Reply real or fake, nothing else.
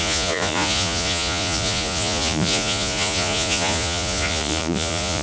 fake